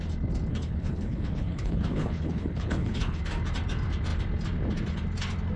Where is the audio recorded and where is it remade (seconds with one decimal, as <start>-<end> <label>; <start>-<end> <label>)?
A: 0.0-0.5 recorded; 0.5-3.2 remade; 3.2-5.6 recorded